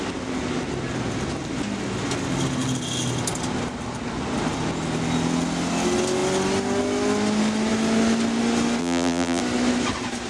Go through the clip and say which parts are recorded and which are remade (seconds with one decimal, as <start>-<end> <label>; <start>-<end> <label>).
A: 0.0-8.8 recorded; 8.8-9.4 remade; 9.4-10.3 recorded